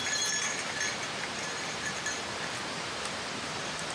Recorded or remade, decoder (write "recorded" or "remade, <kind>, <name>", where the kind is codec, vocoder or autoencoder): recorded